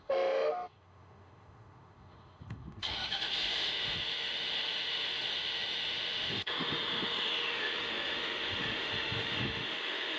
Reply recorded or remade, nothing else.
remade